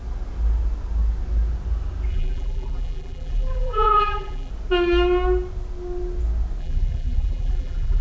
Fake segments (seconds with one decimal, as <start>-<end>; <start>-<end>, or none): 2.1-4.5; 6.6-8.0